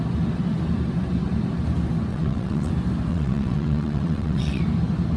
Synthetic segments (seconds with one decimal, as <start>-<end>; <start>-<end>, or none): 2.1-2.7; 3.1-4.6